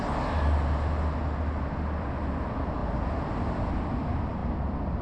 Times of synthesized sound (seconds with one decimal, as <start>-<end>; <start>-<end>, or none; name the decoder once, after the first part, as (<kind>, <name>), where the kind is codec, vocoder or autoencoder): none